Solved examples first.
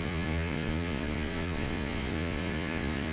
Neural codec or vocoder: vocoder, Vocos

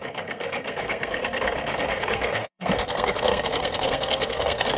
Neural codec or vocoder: codec, SNAC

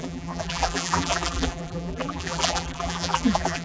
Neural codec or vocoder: vocoder, BigVGAN v2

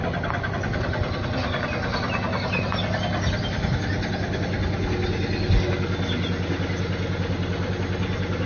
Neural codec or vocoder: none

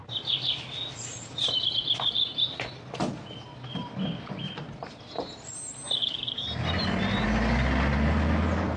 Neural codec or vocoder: none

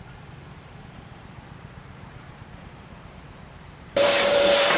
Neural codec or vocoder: vocoder, BigVGAN v2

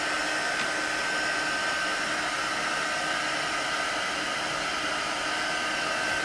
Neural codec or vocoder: none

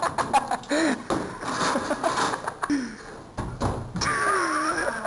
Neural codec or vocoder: none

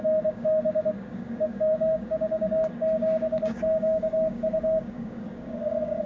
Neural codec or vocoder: codec, DAC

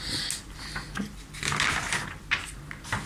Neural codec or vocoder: none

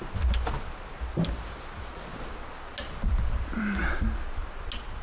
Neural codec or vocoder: none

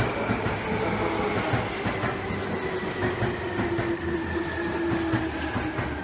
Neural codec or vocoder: none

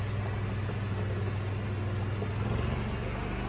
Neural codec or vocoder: none